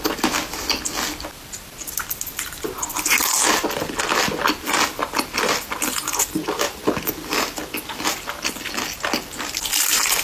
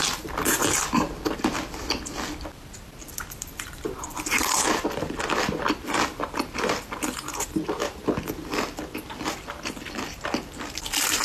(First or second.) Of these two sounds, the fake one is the second